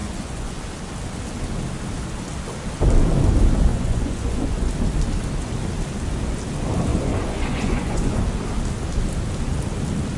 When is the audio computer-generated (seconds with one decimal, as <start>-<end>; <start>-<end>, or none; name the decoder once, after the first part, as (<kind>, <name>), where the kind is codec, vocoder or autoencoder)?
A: 0.0-0.6 (vocoder, Vocos); 3.7-4.7; 6.9-8.2